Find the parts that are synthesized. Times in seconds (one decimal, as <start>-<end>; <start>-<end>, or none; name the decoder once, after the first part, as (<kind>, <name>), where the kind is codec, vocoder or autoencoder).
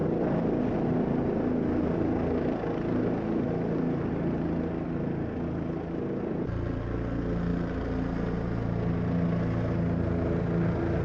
none